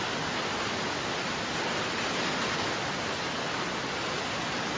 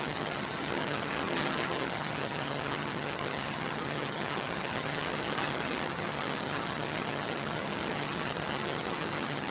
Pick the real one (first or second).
first